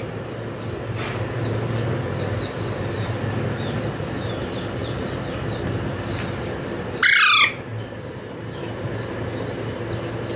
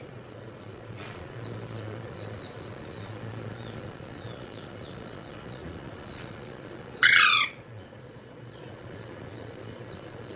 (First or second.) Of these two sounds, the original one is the first